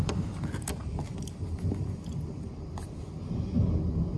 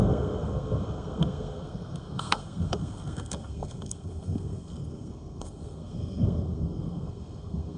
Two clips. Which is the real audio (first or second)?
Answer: first